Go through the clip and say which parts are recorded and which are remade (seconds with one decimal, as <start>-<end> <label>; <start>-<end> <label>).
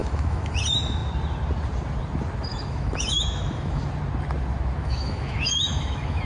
0.0-0.6 remade; 0.6-2.5 recorded; 2.5-3.8 remade; 3.8-4.8 recorded; 4.8-6.2 remade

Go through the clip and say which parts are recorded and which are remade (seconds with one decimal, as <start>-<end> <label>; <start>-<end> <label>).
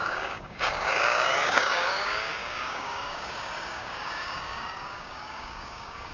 0.0-6.1 remade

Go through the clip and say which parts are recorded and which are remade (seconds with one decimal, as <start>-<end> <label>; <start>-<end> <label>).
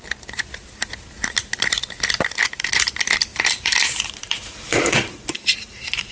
0.0-2.4 recorded; 2.4-2.9 remade; 2.9-3.3 recorded; 3.3-6.1 remade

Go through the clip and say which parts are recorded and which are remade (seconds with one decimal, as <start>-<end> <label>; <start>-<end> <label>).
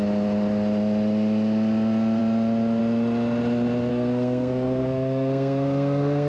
0.0-3.9 recorded; 3.9-6.3 remade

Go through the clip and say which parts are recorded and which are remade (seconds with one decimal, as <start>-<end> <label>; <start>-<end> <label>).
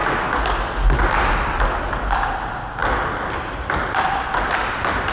0.0-5.1 recorded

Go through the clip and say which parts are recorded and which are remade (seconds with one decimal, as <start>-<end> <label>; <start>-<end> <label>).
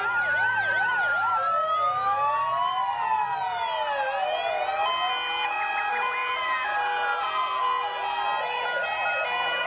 0.0-9.7 recorded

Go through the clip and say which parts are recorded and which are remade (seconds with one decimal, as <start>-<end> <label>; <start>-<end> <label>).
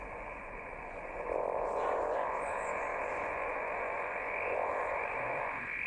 0.0-5.9 remade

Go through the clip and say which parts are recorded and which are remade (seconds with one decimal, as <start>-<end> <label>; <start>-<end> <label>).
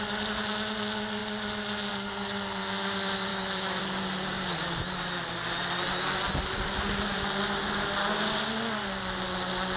0.0-3.3 recorded; 3.3-3.8 remade; 3.8-9.8 recorded